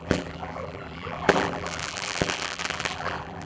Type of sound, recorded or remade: remade